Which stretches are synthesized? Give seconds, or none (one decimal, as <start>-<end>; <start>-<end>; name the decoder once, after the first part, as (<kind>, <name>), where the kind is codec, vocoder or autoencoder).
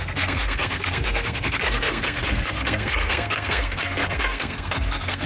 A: 0.0-5.3 (codec, SNAC)